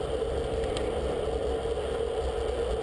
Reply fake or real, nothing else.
real